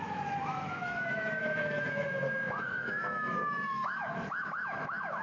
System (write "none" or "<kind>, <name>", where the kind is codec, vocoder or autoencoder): autoencoder, DAC-VAE